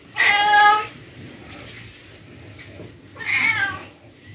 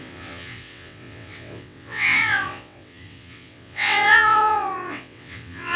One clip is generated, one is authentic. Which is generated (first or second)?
second